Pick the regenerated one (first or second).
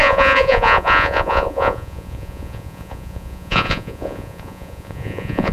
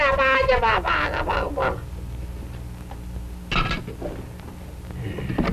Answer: first